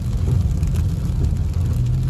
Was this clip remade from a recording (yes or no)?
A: no